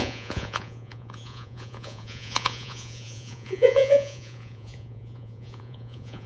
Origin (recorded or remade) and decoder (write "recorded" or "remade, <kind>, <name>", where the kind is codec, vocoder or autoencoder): remade, vocoder, Vocos